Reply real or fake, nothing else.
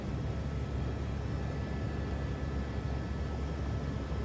real